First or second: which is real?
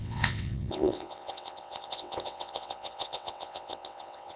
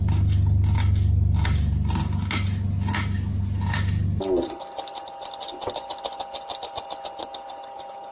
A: second